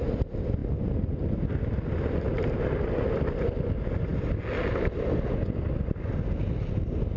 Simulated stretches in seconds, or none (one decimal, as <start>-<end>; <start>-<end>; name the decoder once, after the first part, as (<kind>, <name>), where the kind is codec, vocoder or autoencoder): none